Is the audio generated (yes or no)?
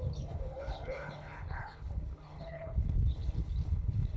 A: yes